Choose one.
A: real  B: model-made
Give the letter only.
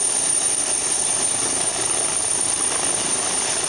A